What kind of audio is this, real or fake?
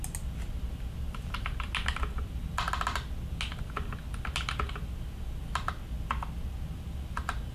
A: real